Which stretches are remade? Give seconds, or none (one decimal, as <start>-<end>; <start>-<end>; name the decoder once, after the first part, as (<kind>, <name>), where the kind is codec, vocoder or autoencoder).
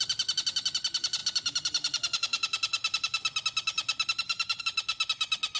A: none